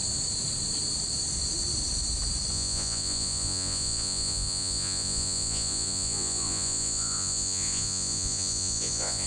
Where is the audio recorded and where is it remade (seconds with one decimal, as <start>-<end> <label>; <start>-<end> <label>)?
0.0-2.5 recorded; 2.5-9.3 remade